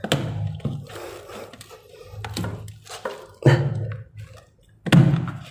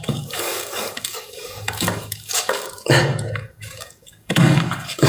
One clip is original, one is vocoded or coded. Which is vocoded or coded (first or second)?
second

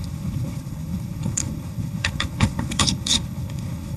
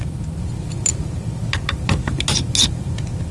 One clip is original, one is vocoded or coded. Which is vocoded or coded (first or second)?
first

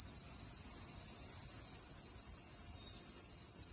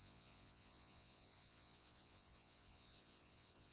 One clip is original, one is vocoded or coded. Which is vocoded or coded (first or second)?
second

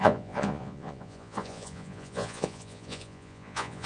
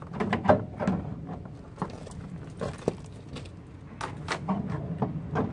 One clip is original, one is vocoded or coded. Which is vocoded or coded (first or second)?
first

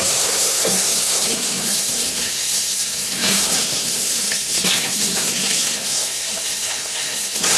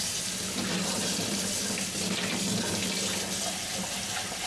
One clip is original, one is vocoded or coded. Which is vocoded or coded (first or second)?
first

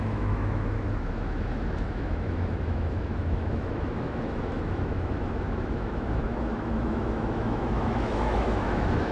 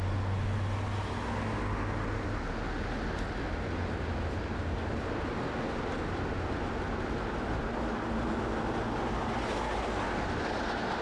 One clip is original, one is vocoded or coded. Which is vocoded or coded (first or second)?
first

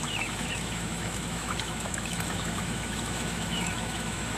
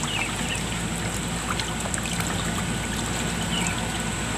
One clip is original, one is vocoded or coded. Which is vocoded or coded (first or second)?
first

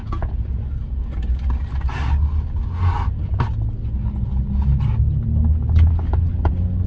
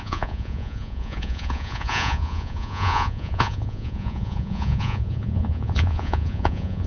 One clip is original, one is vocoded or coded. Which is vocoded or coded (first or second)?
second